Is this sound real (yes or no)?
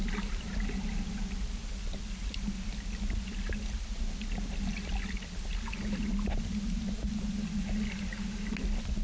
yes